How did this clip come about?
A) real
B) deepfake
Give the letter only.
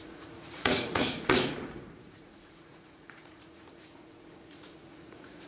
B